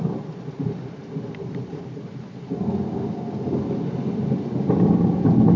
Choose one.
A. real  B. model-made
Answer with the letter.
A